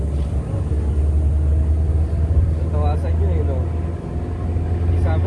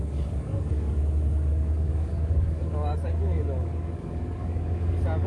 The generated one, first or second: second